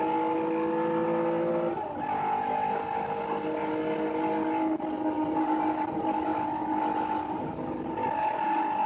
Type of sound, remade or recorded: recorded